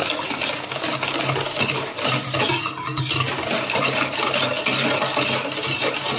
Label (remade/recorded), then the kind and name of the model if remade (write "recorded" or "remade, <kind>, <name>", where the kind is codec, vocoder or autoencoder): recorded